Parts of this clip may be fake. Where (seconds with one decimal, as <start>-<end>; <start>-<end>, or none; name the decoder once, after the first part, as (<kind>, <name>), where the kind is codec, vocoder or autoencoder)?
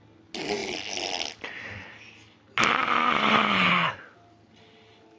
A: none